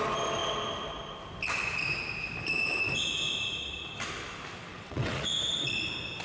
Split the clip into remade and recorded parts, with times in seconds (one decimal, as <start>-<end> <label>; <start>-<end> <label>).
0.0-4.7 recorded; 4.7-5.8 remade; 5.8-6.2 recorded